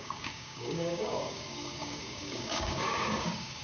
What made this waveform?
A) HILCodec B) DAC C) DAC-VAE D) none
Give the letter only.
B